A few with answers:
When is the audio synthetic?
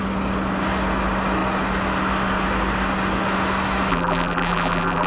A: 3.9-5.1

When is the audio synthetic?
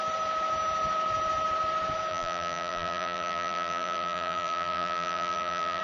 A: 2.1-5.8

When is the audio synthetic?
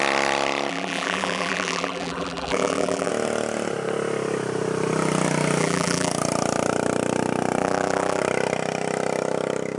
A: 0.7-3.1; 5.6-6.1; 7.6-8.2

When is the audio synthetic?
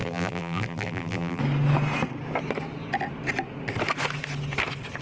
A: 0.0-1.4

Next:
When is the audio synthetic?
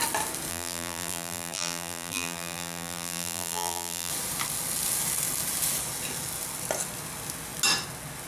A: 0.5-4.1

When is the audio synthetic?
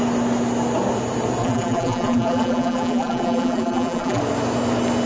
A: 1.4-4.2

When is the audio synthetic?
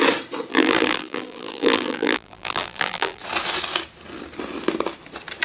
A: 0.5-3.2